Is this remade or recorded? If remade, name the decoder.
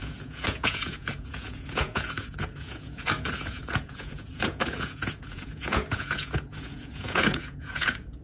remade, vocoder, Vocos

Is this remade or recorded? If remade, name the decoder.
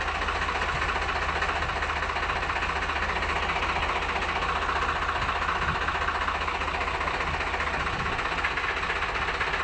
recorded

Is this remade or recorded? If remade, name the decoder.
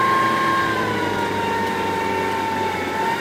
remade, vocoder, BigVGAN v2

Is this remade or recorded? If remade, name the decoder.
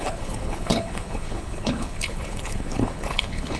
remade, codec, HILCodec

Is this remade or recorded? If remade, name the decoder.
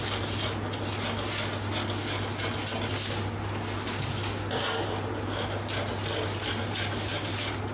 recorded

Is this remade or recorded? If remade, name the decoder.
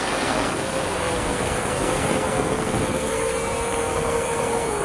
remade, codec, SNAC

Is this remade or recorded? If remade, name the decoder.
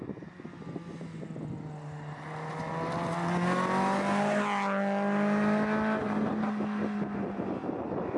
recorded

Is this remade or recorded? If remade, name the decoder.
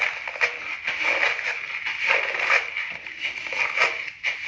recorded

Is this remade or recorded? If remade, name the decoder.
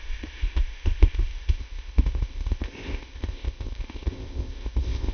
remade, codec, ZipCodec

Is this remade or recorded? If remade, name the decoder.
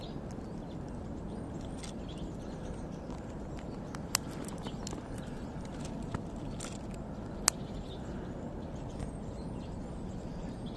recorded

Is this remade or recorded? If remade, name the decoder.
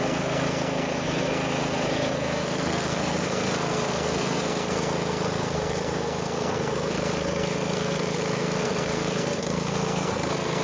remade, codec, SNAC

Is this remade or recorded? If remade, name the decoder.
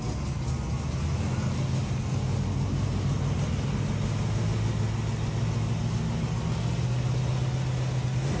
recorded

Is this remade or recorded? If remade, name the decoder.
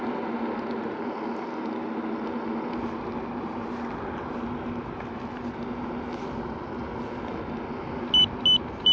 recorded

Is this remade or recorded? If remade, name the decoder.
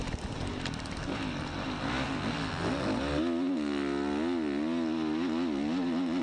recorded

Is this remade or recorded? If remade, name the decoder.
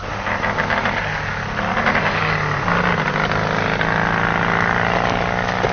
recorded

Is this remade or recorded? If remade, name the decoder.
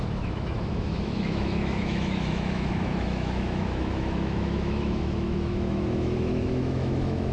remade, autoencoder, DAC-VAE